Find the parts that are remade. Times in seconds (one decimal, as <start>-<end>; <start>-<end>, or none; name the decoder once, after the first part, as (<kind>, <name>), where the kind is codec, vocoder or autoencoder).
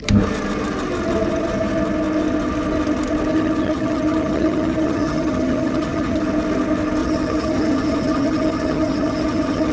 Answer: 3.3-6.2 (vocoder, HiFi-GAN); 7.0-9.7